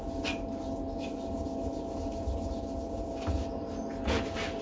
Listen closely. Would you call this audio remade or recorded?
recorded